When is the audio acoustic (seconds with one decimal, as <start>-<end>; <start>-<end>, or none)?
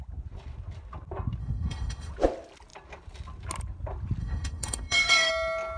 0.0-1.4; 2.1-4.2; 5.3-5.8